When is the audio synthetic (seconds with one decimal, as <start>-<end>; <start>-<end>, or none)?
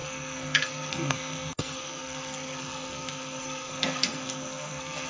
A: 0.0-5.1